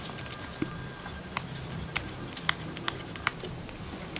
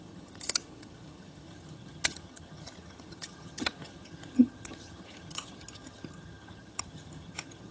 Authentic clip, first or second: first